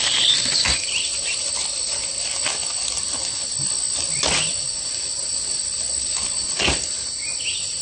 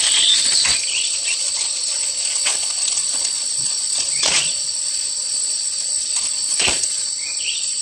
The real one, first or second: first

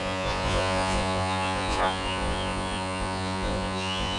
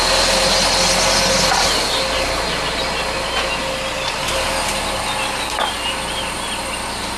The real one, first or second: second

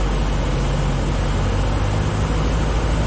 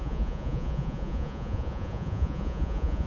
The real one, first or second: first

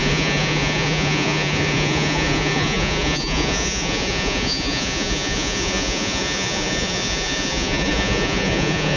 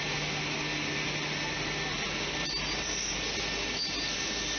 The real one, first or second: second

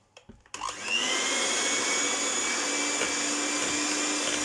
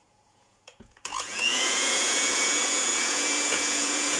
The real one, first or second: first